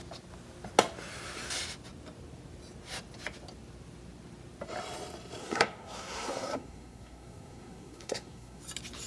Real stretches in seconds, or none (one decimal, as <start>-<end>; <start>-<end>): 0.0-5.4; 8.6-9.1